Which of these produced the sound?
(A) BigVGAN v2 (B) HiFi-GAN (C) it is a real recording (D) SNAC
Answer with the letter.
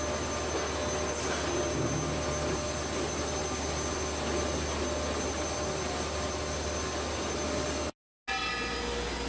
C